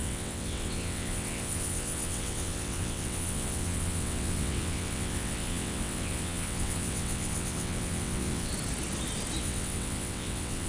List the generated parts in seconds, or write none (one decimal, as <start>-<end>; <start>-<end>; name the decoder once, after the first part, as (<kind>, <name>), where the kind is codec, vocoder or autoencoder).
0.0-8.5 (vocoder, WaveNeXt); 9.4-10.7